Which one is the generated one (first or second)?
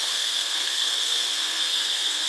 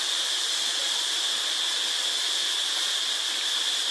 first